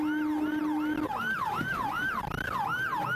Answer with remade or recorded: recorded